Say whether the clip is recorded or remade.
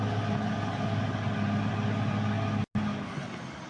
recorded